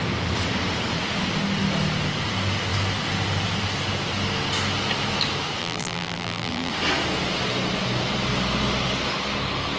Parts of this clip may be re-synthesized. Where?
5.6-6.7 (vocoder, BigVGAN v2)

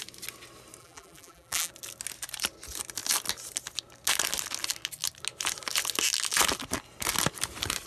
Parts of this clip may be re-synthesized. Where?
0.8-1.7 (vocoder, BigVGAN v2)

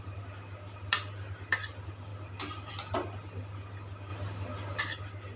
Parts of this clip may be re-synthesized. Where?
0.0-2.1 (vocoder, BigVGAN v2); 2.7-5.4

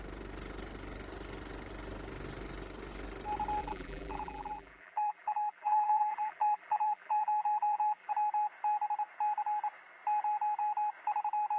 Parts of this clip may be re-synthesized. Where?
3.6-8.1 (vocoder, BigVGAN v2)

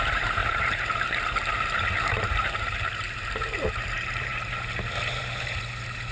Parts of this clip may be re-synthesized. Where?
0.0-4.3 (vocoder, BigVGAN v2); 5.1-6.1

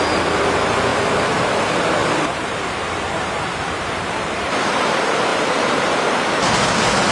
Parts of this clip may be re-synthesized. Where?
2.0-4.8 (vocoder, BigVGAN v2); 5.3-6.0

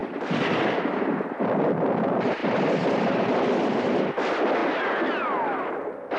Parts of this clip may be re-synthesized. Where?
0.0-1.1 (vocoder, BigVGAN v2); 2.4-4.0